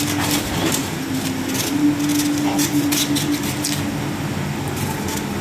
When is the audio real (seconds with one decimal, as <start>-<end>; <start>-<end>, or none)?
0.0-0.6; 1.2-5.4